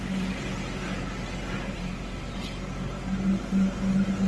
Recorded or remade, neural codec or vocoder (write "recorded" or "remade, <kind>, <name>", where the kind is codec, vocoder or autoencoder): recorded